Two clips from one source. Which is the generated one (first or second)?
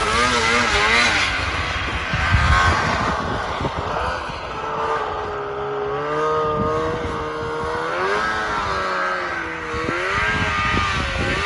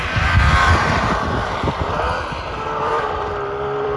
second